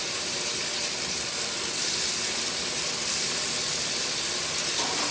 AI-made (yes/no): yes